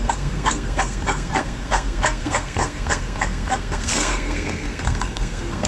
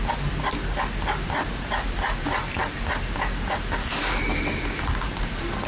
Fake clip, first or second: first